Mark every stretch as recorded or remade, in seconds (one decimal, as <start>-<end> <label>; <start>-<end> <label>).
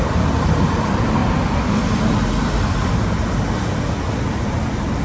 0.0-1.2 remade; 1.2-4.2 recorded; 4.2-5.0 remade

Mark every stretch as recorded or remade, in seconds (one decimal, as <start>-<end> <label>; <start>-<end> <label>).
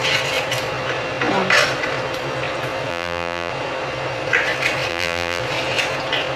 0.0-2.9 recorded; 2.9-3.5 remade; 3.5-4.9 recorded; 4.9-5.4 remade; 5.4-6.4 recorded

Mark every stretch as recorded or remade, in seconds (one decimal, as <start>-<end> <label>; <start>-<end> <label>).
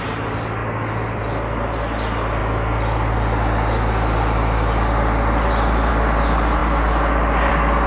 0.0-7.9 recorded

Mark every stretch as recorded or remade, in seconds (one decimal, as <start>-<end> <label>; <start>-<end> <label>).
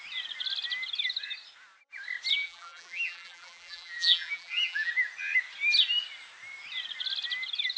0.0-2.4 recorded; 2.4-4.9 remade; 4.9-7.8 recorded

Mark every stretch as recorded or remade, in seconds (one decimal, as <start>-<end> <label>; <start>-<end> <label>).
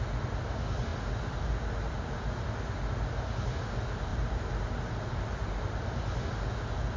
0.0-4.1 recorded; 4.1-5.8 remade; 5.8-7.0 recorded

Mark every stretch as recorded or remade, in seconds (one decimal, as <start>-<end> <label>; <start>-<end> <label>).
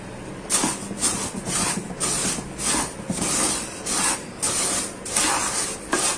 0.0-6.2 recorded